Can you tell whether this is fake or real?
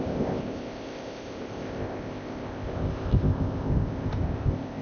fake